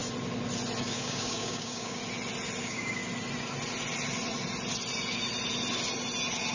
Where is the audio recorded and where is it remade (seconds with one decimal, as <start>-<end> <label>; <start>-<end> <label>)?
0.0-0.8 recorded; 0.8-2.0 remade; 2.0-2.6 recorded; 2.6-3.0 remade; 3.0-6.5 recorded